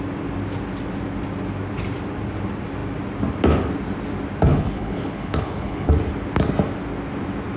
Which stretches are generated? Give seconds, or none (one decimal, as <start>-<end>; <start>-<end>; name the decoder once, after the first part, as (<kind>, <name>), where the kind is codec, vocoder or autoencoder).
4.5-5.9 (codec, HILCodec)